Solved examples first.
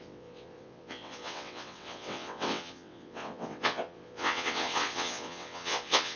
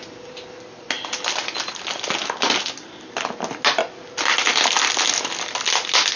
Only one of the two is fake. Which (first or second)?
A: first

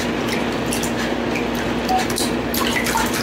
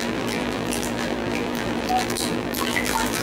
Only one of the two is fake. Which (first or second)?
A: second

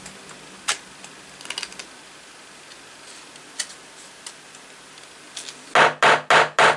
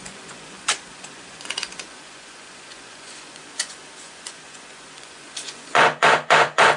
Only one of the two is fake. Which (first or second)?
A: second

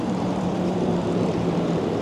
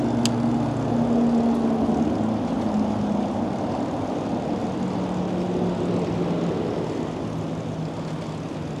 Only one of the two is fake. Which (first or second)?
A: first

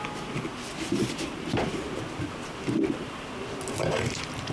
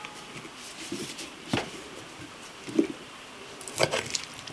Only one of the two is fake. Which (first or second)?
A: second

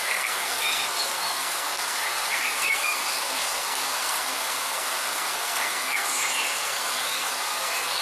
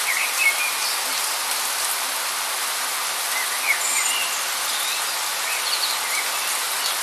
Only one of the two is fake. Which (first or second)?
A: first